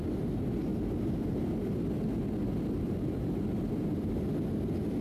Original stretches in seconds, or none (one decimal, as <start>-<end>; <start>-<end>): 0.0-5.0